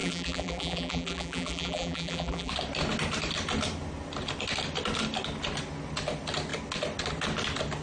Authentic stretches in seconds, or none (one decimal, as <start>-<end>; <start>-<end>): 2.5-7.8